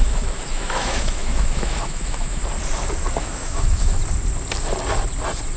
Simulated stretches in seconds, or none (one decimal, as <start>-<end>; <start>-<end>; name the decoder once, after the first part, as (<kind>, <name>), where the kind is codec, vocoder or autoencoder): 0.0-2.4 (autoencoder, DAC-VAE); 3.2-4.0